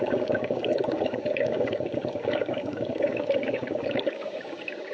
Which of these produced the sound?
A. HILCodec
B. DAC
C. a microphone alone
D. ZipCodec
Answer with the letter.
B